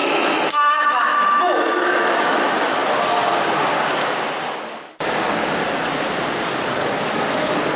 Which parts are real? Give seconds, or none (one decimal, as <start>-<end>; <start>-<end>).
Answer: 2.4-7.8